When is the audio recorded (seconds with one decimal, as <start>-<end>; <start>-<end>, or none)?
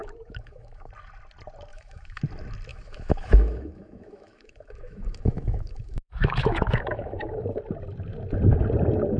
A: 0.9-1.7; 2.2-2.7; 7.6-9.2